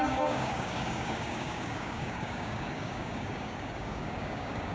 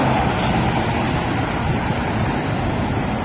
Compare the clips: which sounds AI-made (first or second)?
first